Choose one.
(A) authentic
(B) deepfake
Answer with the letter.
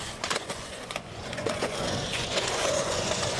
B